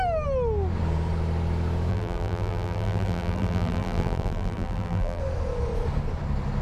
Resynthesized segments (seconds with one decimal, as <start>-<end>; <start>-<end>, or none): 1.9-5.2